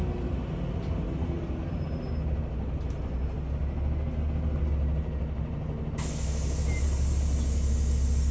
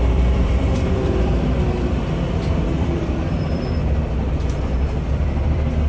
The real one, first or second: first